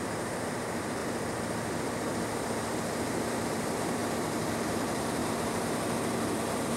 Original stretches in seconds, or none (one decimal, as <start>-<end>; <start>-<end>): 1.0-3.3; 4.0-4.7; 5.2-6.3